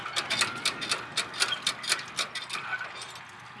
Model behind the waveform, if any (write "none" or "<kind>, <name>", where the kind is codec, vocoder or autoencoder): none